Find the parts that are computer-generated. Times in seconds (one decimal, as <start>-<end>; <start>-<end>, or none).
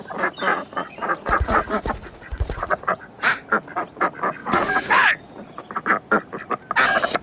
0.5-3.3; 4.4-5.6